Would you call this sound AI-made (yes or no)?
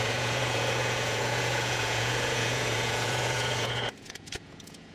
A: yes